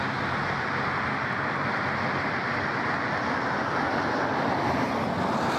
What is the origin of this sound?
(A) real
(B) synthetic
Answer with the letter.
A